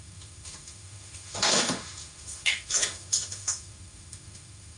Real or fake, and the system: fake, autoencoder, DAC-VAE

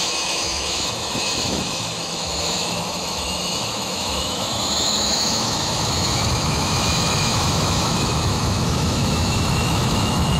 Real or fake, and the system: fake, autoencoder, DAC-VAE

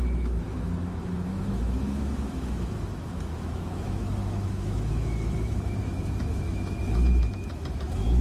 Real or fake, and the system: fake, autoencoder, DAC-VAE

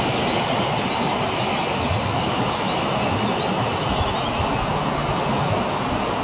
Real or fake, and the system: real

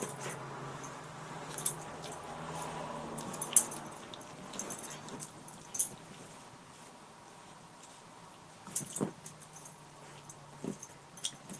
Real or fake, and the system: real